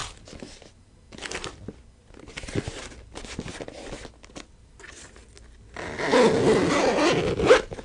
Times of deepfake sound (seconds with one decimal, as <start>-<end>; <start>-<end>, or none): none